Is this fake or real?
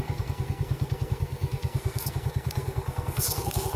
fake